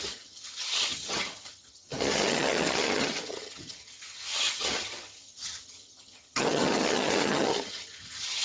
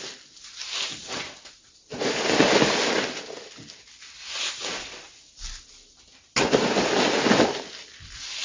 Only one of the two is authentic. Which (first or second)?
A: second